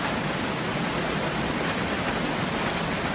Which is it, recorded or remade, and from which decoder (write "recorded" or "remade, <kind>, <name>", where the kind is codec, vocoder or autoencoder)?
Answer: recorded